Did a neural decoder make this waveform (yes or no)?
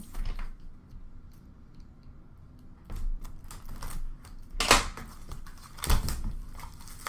no